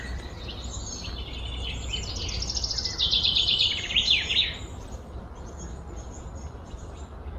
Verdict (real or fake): real